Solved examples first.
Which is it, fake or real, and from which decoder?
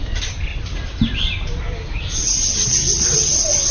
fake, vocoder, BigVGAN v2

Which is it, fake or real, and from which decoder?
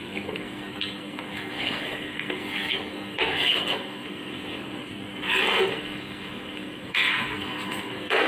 fake, codec, SNAC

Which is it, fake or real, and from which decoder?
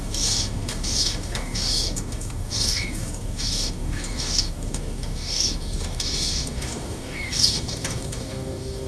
fake, codec, DAC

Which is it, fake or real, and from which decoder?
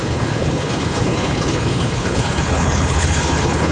fake, codec, HILCodec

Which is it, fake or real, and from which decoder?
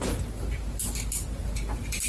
real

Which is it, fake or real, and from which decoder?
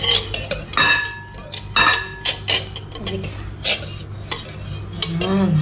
real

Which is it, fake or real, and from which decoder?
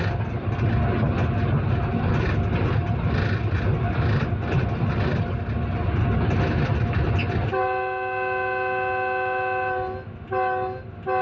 real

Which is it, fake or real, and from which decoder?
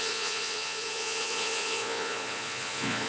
fake, vocoder, Vocos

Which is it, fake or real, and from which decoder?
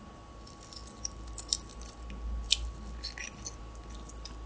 real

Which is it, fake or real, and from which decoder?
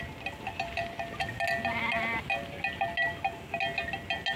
real